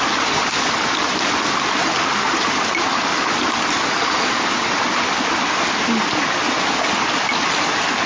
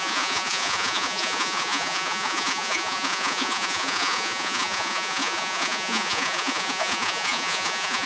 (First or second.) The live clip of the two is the first